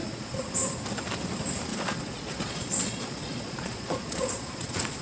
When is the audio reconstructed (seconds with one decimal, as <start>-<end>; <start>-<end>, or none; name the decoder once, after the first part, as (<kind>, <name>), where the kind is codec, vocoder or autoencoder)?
0.0-0.5 (vocoder, Vocos); 1.7-5.0